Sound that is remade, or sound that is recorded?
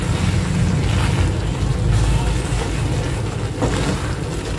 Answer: recorded